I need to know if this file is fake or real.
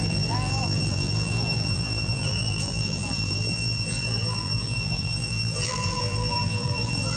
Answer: fake